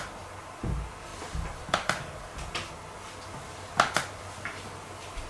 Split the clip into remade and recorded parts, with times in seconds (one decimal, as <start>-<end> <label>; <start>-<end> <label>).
0.0-1.1 recorded; 1.1-2.2 remade; 2.2-4.5 recorded; 4.5-5.3 remade